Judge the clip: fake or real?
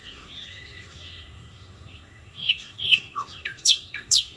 fake